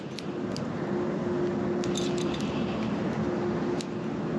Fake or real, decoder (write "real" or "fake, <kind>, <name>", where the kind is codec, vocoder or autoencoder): real